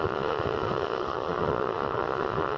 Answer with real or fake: fake